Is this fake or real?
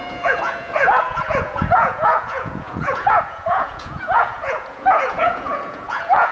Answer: fake